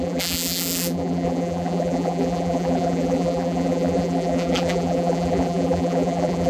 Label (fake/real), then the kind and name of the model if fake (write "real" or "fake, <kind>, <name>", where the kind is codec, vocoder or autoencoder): fake, vocoder, BigVGAN v2